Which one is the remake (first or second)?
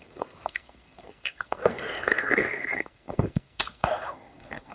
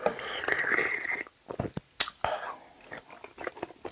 first